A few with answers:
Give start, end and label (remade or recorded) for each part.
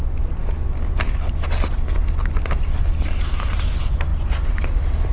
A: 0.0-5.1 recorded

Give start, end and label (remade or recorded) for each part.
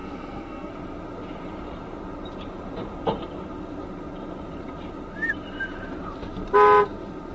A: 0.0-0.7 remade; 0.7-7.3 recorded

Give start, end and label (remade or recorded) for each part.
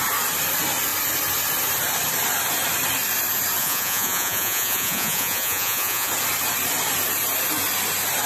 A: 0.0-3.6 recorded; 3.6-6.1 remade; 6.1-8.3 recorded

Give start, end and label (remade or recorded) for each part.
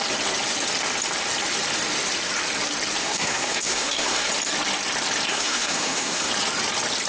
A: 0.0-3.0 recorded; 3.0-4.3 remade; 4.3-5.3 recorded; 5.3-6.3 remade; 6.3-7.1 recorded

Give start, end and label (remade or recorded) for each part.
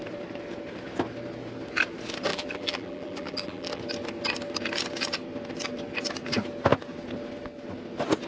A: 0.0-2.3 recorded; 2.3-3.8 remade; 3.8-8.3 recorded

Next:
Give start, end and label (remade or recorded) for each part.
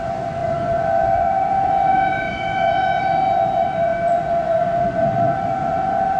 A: 0.0-6.2 remade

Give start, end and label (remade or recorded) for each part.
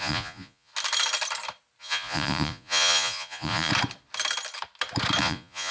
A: 0.0-0.7 remade; 0.7-1.8 recorded; 1.8-3.7 remade; 3.7-5.2 recorded; 5.2-5.7 remade